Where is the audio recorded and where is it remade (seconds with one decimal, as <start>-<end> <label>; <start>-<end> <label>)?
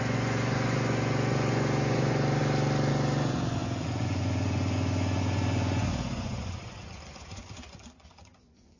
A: 0.0-2.4 remade; 2.4-2.9 recorded; 2.9-8.8 remade